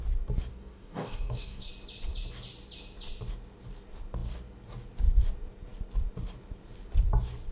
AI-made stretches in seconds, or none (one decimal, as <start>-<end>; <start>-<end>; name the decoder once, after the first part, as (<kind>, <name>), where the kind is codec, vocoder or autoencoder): 0.5-1.7 (codec, DAC)